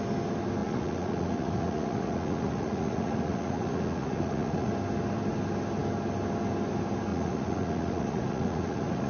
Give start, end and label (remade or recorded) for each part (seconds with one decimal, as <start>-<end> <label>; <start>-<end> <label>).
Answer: 0.0-0.6 recorded; 0.6-4.7 remade; 4.7-7.1 recorded; 7.1-9.1 remade